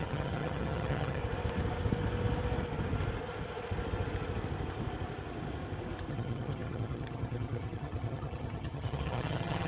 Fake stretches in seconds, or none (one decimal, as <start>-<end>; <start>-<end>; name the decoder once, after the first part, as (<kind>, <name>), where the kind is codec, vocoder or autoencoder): 0.0-1.2 (vocoder, HiFi-GAN); 6.1-9.7